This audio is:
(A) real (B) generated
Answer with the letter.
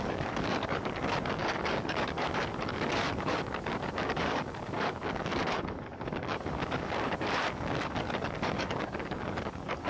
B